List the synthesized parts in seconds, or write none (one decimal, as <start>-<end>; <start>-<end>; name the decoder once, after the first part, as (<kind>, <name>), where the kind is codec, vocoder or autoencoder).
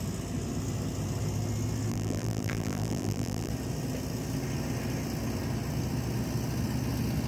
1.9-3.5 (vocoder, BigVGAN v2)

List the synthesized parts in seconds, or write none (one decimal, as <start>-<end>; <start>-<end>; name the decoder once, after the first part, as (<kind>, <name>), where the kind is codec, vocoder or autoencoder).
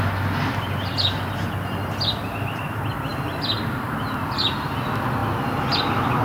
none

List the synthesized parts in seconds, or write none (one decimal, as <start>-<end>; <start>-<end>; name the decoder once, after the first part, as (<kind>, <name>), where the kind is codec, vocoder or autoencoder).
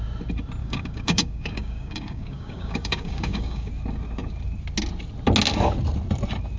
0.6-3.7 (codec, DAC)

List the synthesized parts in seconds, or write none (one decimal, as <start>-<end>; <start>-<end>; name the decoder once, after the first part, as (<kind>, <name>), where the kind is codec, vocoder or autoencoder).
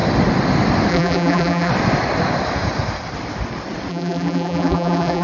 0.9-1.7 (vocoder, BigVGAN v2); 3.9-5.2